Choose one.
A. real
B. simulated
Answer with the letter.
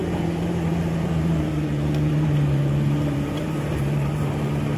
B